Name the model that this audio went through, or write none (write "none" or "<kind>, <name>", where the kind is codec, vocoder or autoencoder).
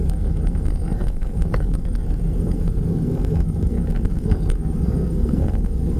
codec, SNAC